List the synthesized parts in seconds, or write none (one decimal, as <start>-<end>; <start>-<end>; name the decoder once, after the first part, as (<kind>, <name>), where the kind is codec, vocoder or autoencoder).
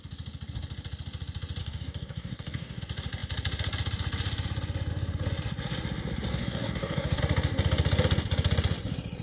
1.6-2.8 (codec, DAC); 6.3-7.2